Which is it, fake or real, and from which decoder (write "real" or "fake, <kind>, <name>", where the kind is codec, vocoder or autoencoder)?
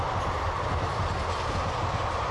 real